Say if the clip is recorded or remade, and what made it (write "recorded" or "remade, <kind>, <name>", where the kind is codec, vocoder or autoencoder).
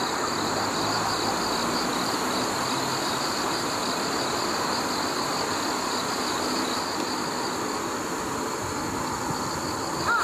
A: recorded